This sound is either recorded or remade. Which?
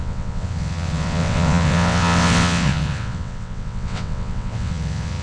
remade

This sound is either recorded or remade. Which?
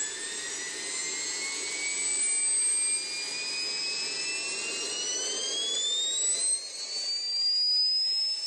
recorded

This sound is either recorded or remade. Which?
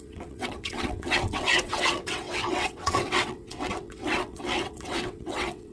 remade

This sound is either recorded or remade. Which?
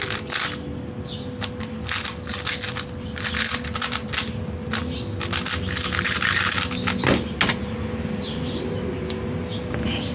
recorded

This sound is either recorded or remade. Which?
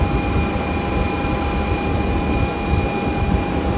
recorded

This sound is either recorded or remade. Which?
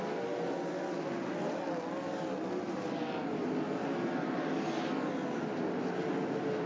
recorded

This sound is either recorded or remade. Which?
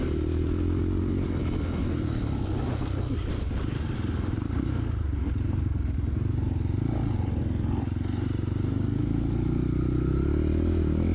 recorded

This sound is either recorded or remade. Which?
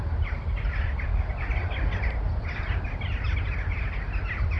recorded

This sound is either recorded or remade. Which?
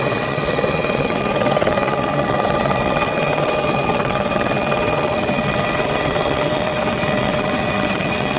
remade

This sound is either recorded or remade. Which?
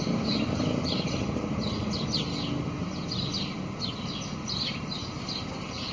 recorded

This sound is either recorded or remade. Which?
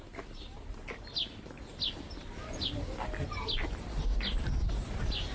recorded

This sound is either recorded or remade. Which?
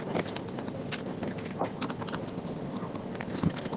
recorded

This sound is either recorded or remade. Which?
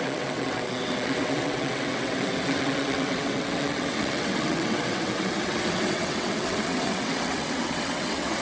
remade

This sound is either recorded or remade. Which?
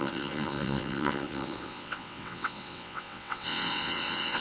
remade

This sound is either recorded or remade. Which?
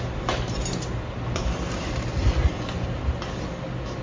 recorded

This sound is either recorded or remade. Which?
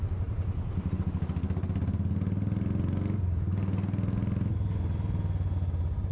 recorded